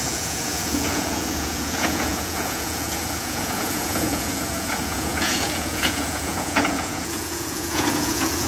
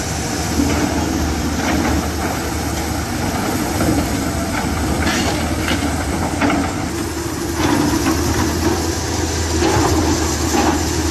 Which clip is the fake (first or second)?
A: first